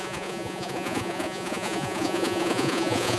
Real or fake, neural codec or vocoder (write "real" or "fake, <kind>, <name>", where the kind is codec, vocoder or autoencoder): fake, vocoder, Vocos